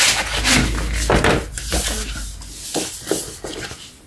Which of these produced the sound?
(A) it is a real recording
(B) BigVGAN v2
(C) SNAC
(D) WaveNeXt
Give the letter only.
A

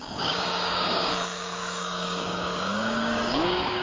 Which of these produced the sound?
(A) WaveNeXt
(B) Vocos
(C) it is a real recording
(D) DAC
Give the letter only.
D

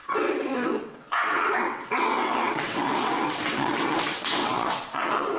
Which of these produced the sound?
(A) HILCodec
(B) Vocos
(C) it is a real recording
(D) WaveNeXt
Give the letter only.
D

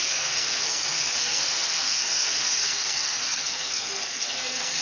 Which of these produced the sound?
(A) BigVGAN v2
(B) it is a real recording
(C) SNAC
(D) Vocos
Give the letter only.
C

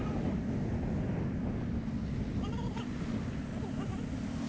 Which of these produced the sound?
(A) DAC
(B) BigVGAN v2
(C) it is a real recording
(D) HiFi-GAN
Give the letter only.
C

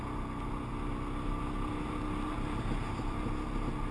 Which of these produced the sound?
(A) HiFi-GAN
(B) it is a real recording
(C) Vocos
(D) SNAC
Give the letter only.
B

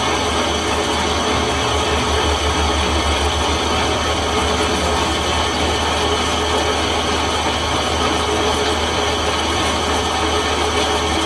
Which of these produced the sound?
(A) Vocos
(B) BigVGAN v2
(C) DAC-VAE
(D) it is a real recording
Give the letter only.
D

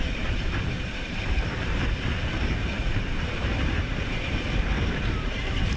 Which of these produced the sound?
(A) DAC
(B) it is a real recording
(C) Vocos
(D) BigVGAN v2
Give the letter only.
D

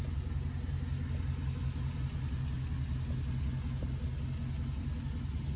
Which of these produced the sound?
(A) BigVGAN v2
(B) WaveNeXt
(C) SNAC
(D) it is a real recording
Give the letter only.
D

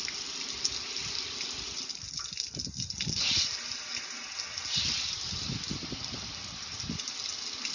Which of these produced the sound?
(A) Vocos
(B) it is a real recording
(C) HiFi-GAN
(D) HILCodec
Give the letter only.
B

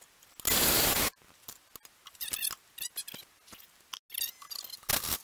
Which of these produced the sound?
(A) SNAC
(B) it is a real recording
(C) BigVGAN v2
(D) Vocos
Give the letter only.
B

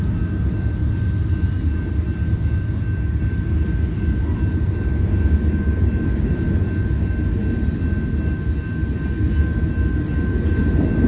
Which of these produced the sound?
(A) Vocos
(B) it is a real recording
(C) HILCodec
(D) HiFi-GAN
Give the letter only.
B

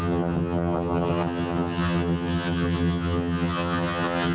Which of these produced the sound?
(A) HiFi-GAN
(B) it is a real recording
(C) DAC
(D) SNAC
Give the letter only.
A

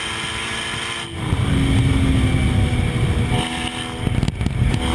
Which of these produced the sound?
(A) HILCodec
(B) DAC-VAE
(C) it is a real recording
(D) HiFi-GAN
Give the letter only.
C